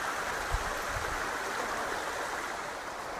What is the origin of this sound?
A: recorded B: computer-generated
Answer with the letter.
A